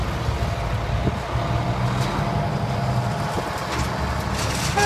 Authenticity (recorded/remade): recorded